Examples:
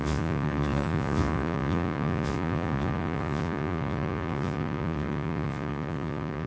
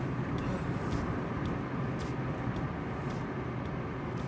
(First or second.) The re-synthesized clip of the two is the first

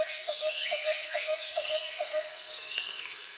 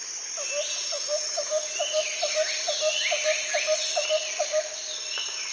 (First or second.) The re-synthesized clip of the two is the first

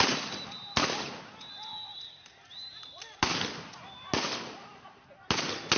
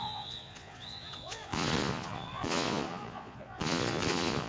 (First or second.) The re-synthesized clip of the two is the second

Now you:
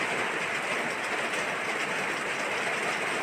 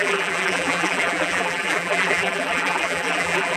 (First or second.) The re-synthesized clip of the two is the second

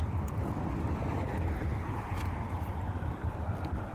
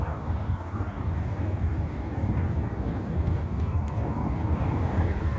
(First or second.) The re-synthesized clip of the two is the second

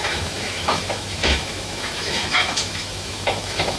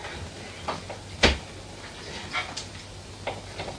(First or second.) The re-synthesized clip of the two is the first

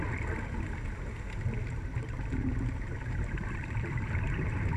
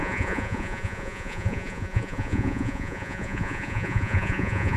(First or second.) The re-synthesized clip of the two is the second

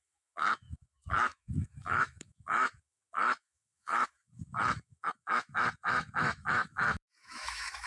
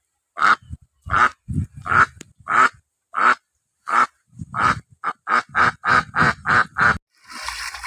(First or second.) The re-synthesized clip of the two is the first